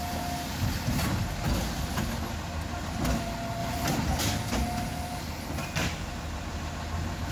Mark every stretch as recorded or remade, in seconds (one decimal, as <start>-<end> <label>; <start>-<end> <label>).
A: 0.0-7.3 recorded